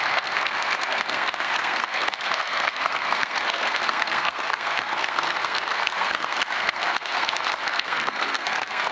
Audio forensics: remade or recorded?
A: remade